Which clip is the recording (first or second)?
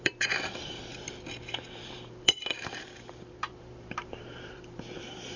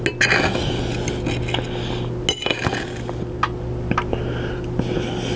second